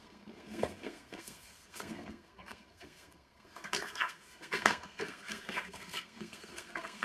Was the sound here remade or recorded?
remade